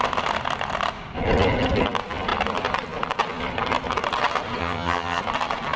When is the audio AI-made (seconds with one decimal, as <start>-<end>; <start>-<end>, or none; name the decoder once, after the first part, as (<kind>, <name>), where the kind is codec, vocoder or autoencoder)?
4.6-5.2 (vocoder, HiFi-GAN)